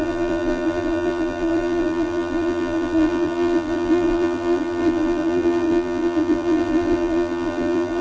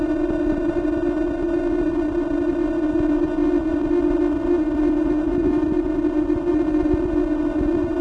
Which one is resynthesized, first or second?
first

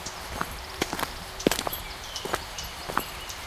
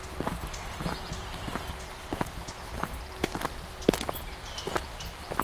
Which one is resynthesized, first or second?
first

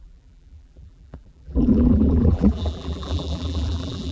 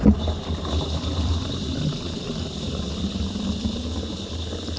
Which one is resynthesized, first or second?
first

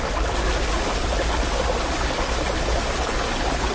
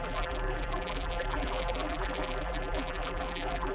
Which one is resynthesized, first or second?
second